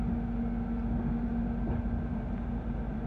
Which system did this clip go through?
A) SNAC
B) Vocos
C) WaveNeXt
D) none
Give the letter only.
D